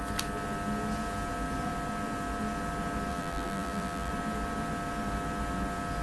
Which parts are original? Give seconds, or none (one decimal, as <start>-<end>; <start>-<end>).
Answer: 0.0-3.1; 4.1-6.0